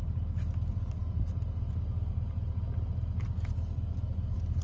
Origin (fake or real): real